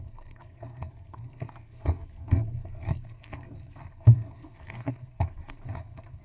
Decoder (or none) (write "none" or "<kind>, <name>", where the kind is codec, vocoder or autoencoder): codec, SNAC